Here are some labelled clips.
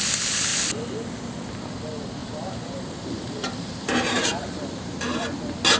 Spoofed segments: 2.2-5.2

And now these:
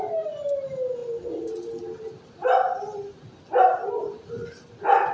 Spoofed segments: none

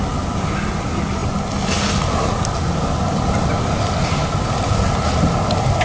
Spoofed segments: none

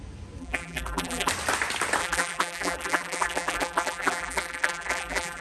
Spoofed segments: 0.4-1.3; 2.0-5.4

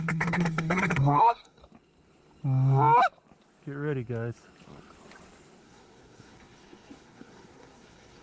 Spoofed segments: 0.0-1.6; 5.6-8.2

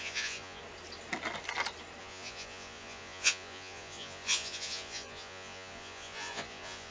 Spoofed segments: 0.0-0.6; 2.0-6.9